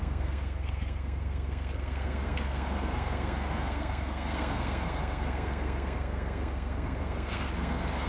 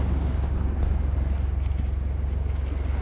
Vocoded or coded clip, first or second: first